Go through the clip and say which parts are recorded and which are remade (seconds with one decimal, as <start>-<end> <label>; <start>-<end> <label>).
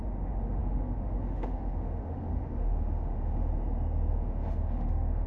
0.0-3.5 remade; 3.5-4.1 recorded; 4.1-5.3 remade